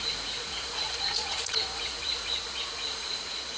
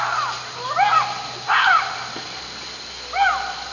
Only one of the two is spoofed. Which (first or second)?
first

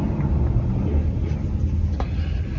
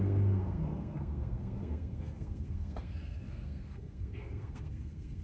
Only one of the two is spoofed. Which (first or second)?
second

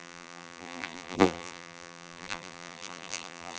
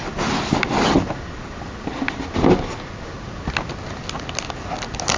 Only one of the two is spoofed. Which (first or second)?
first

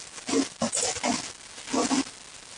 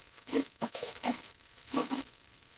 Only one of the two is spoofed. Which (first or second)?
second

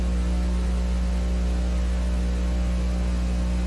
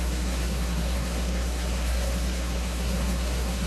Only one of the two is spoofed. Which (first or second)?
second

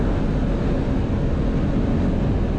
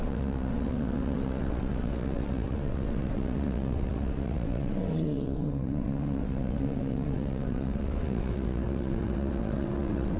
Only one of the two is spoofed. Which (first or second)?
second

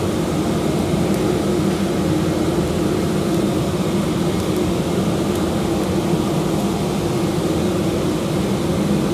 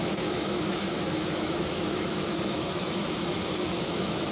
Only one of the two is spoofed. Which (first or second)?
second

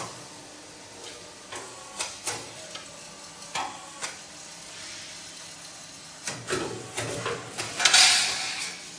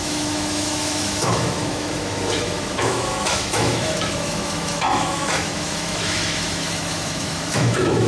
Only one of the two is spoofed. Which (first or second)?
second